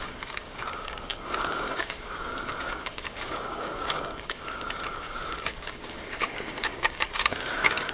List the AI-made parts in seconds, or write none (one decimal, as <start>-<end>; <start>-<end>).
0.0-7.9